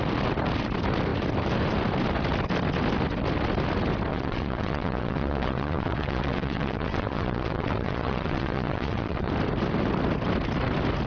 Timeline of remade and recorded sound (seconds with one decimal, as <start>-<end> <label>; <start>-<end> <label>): 0.0-4.1 recorded; 4.1-9.3 remade; 9.3-11.1 recorded